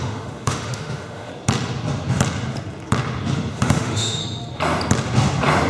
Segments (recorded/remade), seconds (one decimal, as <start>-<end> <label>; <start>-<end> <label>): 0.0-1.3 remade; 1.3-3.5 recorded; 3.5-4.2 remade; 4.2-5.7 recorded